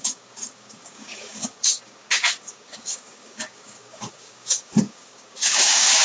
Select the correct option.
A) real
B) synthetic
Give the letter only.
B